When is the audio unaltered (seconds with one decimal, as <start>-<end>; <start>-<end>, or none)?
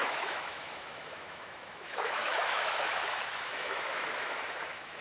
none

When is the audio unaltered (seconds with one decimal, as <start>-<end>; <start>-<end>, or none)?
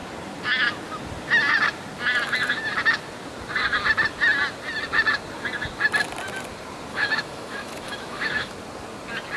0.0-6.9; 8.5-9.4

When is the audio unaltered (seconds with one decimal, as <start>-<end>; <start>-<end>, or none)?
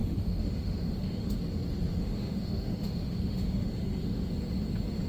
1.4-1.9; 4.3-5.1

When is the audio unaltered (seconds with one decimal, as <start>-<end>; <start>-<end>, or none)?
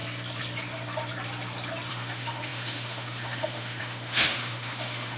0.0-1.9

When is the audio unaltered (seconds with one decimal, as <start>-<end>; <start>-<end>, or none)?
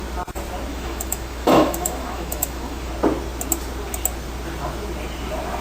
0.0-0.7; 2.9-5.6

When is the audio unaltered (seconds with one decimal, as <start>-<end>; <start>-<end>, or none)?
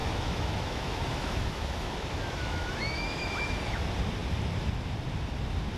3.5-5.8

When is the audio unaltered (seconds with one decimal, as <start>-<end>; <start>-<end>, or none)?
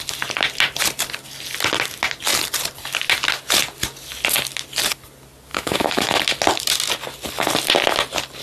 0.0-5.5; 6.2-8.4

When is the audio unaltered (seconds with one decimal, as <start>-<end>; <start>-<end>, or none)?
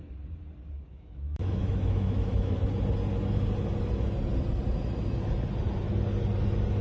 0.0-0.9; 2.6-6.8